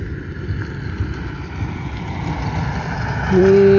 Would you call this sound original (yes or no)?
yes